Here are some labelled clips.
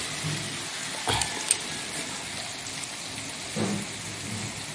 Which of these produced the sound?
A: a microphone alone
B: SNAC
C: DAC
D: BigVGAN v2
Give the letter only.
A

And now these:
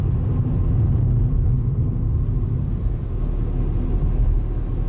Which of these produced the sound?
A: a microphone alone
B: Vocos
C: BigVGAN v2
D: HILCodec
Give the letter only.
A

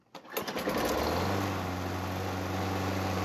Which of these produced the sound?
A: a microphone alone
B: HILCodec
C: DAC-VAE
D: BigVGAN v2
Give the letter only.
A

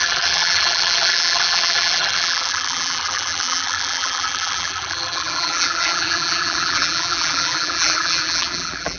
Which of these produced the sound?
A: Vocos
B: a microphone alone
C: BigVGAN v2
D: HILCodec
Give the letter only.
C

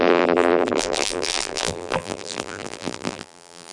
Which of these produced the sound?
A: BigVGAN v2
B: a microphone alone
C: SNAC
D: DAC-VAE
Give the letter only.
A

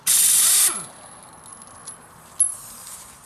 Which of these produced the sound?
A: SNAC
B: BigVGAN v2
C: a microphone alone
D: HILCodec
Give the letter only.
C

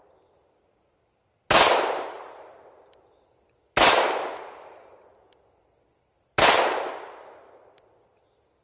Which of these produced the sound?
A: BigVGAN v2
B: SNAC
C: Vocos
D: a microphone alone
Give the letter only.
D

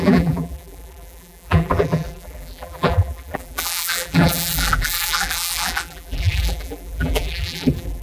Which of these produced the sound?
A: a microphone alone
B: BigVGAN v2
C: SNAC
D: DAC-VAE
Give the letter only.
B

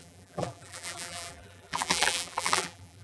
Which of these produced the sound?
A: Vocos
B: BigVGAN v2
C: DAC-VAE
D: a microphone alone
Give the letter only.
B